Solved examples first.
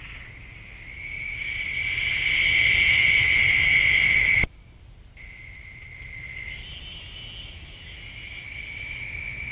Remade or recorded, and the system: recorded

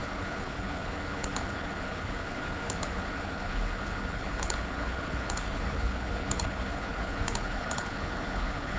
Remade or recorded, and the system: remade, codec, HILCodec